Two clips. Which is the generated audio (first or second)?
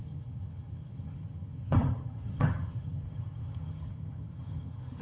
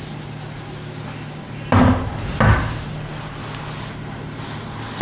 first